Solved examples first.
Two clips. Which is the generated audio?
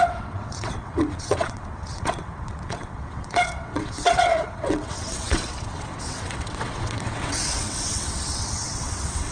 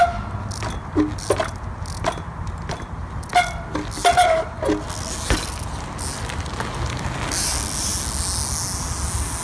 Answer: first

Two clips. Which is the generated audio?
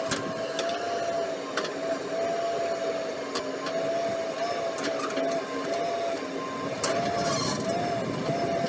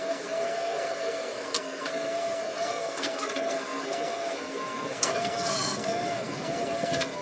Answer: second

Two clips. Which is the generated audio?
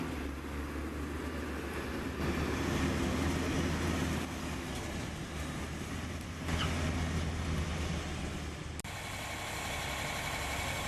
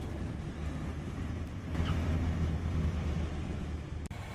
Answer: second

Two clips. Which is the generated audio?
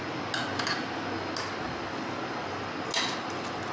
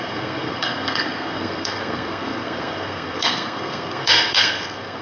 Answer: second